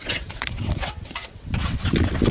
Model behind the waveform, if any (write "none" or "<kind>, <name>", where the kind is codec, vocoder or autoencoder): vocoder, WaveNeXt